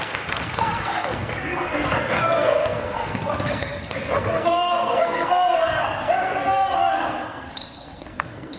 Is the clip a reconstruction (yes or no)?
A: yes